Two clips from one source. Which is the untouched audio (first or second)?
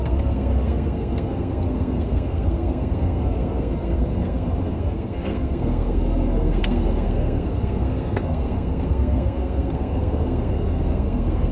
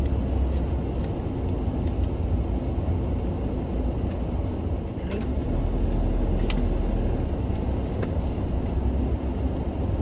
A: second